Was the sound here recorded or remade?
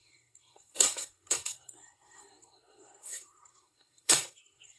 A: remade